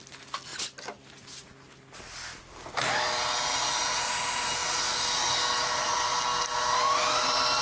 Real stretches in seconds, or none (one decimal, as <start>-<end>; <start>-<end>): 0.0-7.6